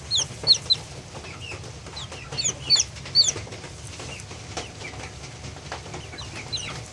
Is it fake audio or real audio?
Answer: real